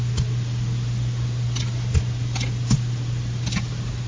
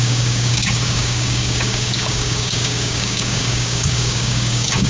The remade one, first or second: second